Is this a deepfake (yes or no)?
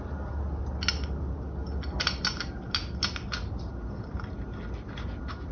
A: no